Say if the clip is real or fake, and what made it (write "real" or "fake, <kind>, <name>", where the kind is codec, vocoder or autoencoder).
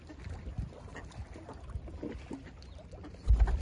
real